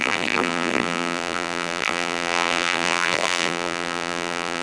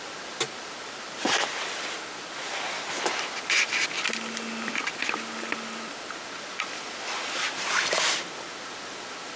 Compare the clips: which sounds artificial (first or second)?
first